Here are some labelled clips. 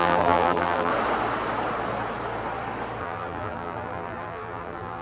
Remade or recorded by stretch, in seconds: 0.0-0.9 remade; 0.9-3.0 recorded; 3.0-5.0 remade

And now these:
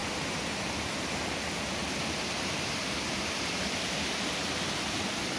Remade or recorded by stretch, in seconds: 0.0-0.9 remade; 0.9-1.8 recorded; 1.8-5.0 remade; 5.0-5.4 recorded

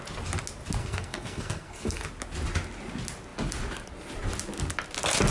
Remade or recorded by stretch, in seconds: 0.0-0.8 recorded; 0.8-2.1 remade; 2.1-5.3 recorded

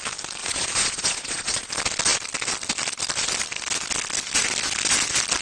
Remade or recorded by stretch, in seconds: 0.0-0.4 recorded; 0.4-1.7 remade; 1.7-5.4 recorded

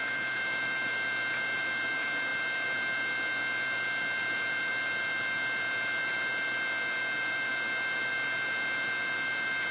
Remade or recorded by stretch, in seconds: 0.0-9.7 recorded

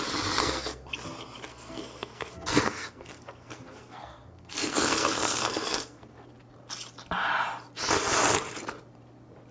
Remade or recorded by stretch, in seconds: 0.0-0.4 recorded; 0.4-0.9 remade; 0.9-1.5 recorded; 1.5-6.3 remade; 6.3-9.5 recorded

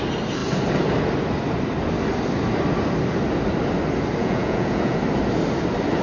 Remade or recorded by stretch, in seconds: 0.0-4.2 recorded; 4.2-5.0 remade; 5.0-6.0 recorded

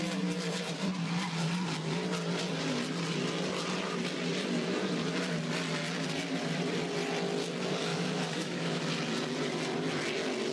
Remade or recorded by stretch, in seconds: 0.0-7.9 recorded; 7.9-8.8 remade; 8.8-10.5 recorded